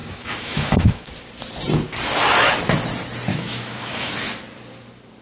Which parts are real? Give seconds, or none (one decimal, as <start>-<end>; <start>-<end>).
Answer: 1.1-3.3; 4.1-5.2

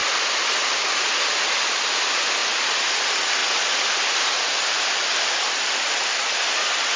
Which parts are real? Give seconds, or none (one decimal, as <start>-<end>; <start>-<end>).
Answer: 0.0-2.4; 3.0-3.4; 6.5-7.0

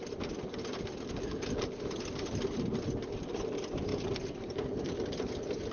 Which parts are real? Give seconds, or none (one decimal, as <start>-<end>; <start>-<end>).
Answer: 0.0-5.7

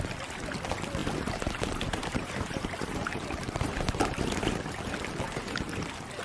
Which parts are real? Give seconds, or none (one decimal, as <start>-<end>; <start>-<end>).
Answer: 0.0-1.0; 4.7-6.2

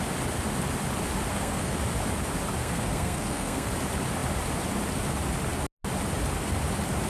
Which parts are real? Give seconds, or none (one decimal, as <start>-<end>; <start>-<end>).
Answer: 0.0-1.3; 1.8-2.6; 3.7-7.1

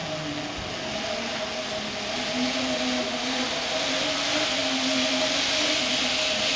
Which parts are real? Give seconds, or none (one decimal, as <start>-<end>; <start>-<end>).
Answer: 0.0-6.6